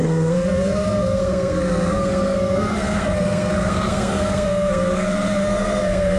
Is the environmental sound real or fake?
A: fake